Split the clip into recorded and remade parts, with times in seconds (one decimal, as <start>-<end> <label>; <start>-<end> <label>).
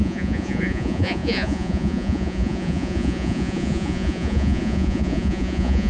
0.0-5.9 remade